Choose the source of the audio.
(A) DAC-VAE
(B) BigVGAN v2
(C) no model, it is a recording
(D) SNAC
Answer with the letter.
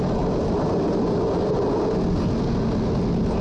C